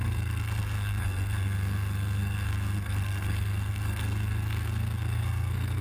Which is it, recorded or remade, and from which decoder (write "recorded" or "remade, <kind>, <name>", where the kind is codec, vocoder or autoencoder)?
remade, codec, SNAC